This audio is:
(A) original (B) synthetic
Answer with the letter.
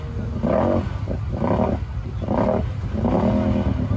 A